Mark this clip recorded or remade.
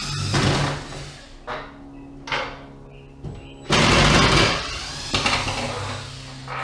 recorded